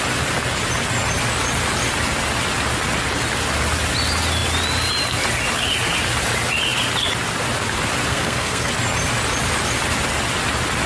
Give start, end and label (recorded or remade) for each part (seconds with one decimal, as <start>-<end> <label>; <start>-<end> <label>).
0.0-8.1 recorded; 8.1-8.7 remade; 8.7-10.9 recorded